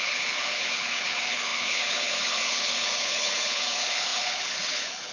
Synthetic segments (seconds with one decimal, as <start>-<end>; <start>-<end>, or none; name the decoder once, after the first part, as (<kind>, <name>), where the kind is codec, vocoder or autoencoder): 0.0-5.1 (codec, HILCodec)